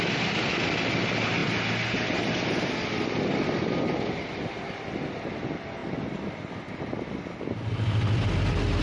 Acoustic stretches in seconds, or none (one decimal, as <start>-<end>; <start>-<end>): 0.0-8.8